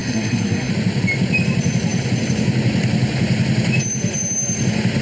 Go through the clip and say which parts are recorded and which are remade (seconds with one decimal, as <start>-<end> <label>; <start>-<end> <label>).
0.0-0.7 remade; 0.7-5.0 recorded